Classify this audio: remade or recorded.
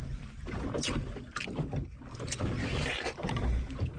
recorded